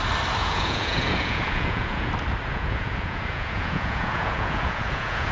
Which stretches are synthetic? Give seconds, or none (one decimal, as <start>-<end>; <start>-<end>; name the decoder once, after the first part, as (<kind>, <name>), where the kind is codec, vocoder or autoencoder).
0.4-2.1 (vocoder, Vocos); 2.5-5.3